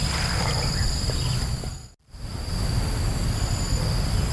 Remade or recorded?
recorded